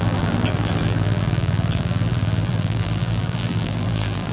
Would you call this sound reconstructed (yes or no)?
yes